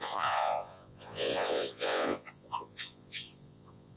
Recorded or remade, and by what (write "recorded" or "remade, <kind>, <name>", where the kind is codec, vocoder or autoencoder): remade, vocoder, Vocos